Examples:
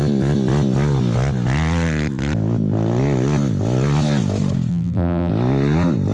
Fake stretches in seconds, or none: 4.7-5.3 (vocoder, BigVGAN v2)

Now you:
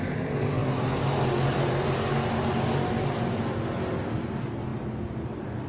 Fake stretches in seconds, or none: none

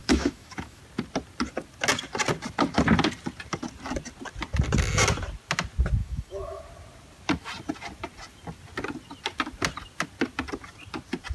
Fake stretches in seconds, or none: 0.0-0.8 (autoencoder, DAC-VAE); 6.0-6.6

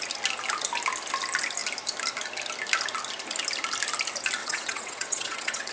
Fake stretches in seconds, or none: 4.4-5.7 (vocoder, WaveNeXt)

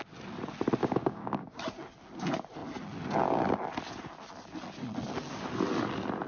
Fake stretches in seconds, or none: 0.8-1.6 (codec, DAC)

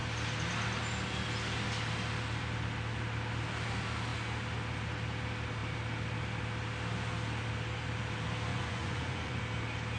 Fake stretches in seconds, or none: 8.5-9.4 (vocoder, Vocos)

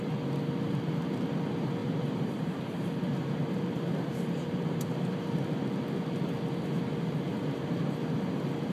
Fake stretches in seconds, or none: 1.8-5.2 (vocoder, BigVGAN v2); 7.3-7.8